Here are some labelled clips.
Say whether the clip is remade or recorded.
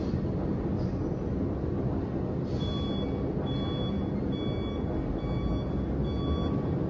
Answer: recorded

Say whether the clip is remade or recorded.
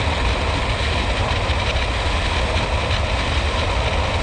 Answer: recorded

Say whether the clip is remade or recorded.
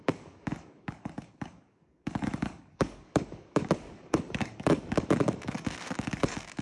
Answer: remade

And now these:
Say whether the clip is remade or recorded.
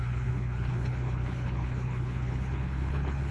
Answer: remade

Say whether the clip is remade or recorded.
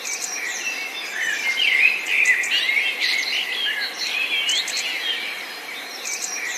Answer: recorded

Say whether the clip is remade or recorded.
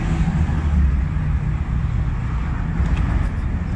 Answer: recorded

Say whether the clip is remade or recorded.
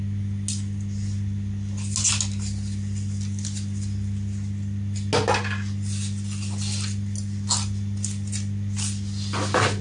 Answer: recorded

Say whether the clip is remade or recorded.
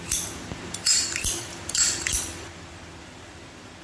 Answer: remade